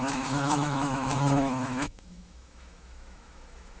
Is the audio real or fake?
fake